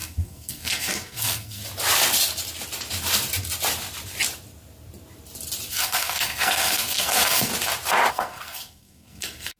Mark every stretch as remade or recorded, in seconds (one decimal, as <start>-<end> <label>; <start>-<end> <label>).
0.0-1.6 remade; 1.6-5.7 recorded; 5.7-7.5 remade; 7.5-8.1 recorded; 8.1-9.6 remade